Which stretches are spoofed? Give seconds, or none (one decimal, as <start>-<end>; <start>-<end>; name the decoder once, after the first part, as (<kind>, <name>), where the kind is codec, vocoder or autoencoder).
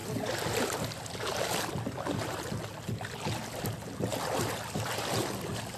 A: none